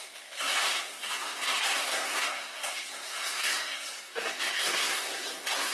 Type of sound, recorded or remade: remade